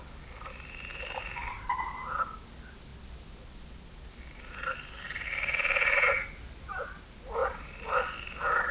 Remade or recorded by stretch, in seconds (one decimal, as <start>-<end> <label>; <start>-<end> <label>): 0.0-0.9 recorded; 0.9-1.8 remade; 1.8-7.4 recorded; 7.4-8.0 remade; 8.0-8.7 recorded

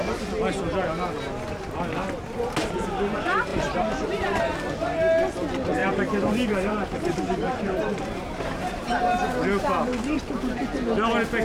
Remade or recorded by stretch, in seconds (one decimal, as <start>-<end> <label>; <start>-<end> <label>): 0.0-3.5 recorded; 3.5-4.4 remade; 4.4-5.8 recorded; 5.8-9.0 remade; 9.0-9.9 recorded; 9.9-10.6 remade; 10.6-11.4 recorded

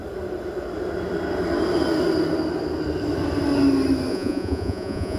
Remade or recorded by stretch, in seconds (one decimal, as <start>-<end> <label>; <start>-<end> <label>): 0.0-4.1 recorded; 4.1-5.2 remade